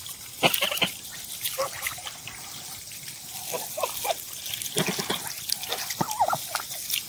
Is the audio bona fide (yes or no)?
yes